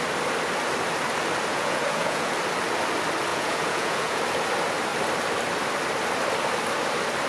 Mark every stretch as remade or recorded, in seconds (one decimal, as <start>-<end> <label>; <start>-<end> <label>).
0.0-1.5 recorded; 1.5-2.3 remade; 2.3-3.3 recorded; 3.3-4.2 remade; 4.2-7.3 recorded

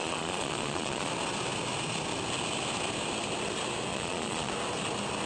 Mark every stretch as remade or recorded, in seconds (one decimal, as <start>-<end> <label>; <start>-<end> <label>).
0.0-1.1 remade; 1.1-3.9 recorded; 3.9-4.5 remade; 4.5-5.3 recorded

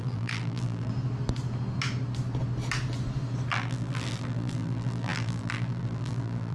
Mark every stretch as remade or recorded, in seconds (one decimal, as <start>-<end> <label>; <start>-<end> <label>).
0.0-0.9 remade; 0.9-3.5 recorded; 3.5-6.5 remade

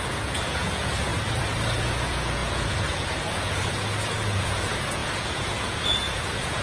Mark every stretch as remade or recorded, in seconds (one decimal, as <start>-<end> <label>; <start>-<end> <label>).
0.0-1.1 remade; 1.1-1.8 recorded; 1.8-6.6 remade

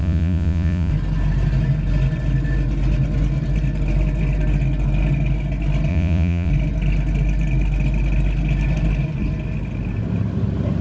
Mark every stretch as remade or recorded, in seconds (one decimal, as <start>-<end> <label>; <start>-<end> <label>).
0.0-0.9 remade; 0.9-5.9 recorded; 5.9-6.5 remade; 6.5-10.8 recorded

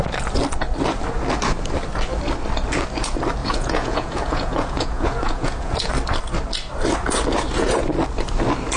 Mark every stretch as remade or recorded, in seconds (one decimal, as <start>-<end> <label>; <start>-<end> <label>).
0.0-3.4 recorded; 3.4-5.9 remade; 5.9-8.8 recorded